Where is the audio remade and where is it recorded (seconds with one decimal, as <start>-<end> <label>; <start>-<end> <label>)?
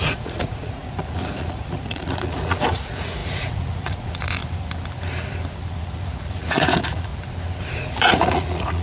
0.0-4.4 remade; 4.4-5.8 recorded; 5.8-7.1 remade; 7.1-7.7 recorded; 7.7-8.8 remade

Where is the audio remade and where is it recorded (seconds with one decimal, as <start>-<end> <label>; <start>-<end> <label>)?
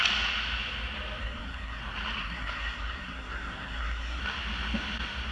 0.0-1.2 recorded; 1.2-1.8 remade; 1.8-2.2 recorded; 2.2-4.2 remade; 4.2-5.3 recorded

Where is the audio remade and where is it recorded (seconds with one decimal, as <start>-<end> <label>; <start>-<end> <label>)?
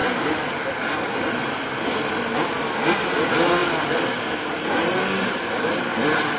0.0-6.4 recorded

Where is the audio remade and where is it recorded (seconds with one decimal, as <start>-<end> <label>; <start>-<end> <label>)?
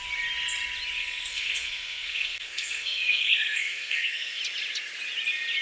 0.0-1.0 recorded; 1.0-4.4 remade; 4.4-5.6 recorded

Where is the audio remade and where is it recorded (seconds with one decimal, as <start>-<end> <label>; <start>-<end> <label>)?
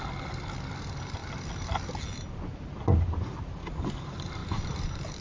0.0-4.4 recorded; 4.4-5.2 remade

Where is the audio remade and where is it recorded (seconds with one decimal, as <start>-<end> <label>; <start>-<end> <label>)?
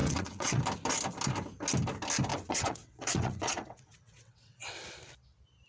0.0-0.6 remade; 0.6-2.3 recorded; 2.3-4.7 remade; 4.7-5.7 recorded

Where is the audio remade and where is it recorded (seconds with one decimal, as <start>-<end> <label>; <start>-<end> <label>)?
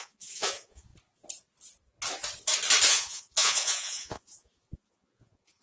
0.0-0.9 remade; 0.9-2.9 recorded; 2.9-5.6 remade